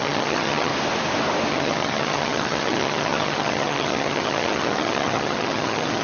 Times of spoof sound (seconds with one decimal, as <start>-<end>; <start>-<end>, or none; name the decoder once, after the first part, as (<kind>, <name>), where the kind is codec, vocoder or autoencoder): 0.0-0.7 (vocoder, HiFi-GAN); 1.5-6.0